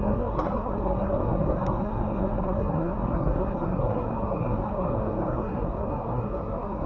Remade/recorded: remade